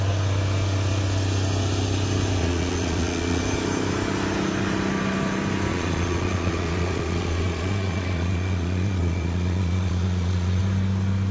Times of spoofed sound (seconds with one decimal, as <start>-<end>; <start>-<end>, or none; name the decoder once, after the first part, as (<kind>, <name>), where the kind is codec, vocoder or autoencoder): 2.4-3.4 (vocoder, Vocos); 5.7-10.6